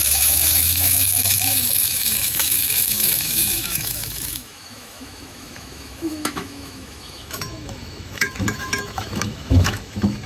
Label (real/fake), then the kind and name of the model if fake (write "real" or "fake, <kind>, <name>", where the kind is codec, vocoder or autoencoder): fake, autoencoder, DAC-VAE